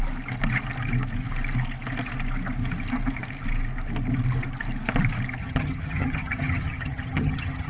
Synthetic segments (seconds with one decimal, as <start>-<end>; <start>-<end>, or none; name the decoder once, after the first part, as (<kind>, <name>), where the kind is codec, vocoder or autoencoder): 5.4-7.7 (vocoder, HiFi-GAN)